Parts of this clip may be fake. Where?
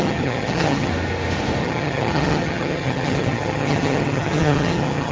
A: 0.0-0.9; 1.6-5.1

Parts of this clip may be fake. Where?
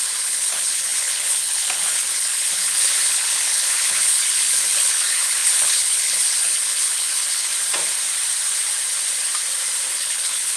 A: 0.0-7.5; 9.9-10.6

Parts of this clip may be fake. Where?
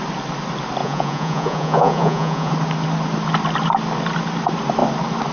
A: 0.8-2.5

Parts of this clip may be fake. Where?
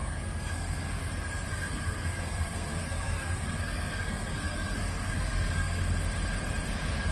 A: 0.0-1.1; 1.5-5.8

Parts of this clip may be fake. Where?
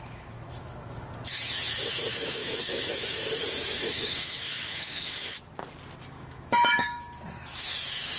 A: 0.0-5.5; 6.0-8.2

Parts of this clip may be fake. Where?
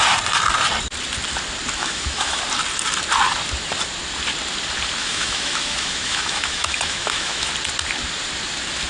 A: 1.8-2.4; 5.0-7.5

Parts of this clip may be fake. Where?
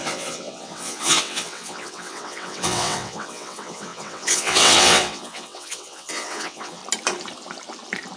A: 0.0-6.8